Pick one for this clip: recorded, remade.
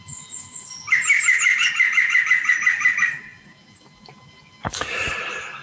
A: recorded